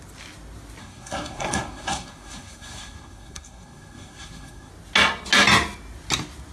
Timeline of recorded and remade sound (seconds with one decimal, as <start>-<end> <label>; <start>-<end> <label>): 0.0-0.8 recorded; 0.8-4.7 remade; 4.7-6.5 recorded